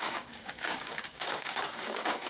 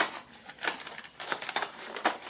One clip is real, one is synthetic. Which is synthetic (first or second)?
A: first